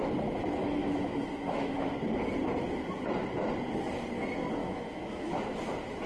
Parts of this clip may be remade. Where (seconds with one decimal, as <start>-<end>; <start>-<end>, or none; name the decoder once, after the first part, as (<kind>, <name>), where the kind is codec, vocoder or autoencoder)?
0.6-1.9 (autoencoder, DAC-VAE); 4.6-5.5